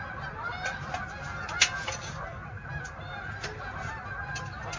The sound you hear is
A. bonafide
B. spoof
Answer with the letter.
A